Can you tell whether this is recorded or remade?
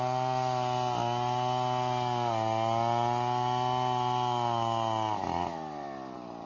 recorded